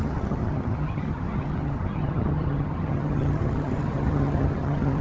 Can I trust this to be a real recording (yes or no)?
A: no